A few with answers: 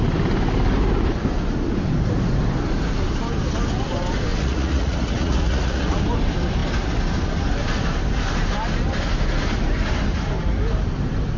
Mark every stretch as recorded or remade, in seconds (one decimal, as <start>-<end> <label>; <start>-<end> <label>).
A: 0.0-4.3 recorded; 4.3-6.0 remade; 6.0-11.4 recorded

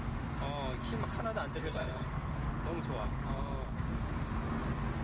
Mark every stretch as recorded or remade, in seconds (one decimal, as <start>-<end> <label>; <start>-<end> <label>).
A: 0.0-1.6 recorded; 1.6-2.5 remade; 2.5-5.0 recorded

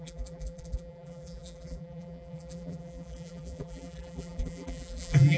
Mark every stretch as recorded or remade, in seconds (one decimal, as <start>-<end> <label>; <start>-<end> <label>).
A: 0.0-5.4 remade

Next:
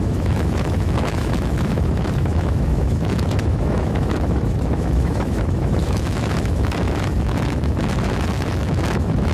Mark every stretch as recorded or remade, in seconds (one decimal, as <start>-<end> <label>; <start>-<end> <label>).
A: 0.0-9.3 remade

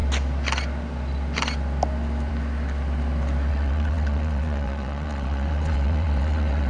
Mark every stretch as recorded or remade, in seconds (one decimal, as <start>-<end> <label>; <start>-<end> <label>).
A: 0.0-3.5 recorded; 3.5-6.7 remade